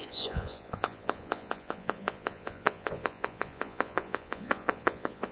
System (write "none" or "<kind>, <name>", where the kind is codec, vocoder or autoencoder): vocoder, Vocos